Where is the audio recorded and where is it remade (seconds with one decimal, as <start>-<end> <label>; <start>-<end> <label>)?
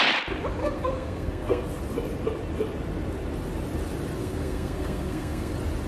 0.0-0.6 recorded; 0.6-1.6 remade; 1.6-4.2 recorded; 4.2-5.5 remade; 5.5-5.9 recorded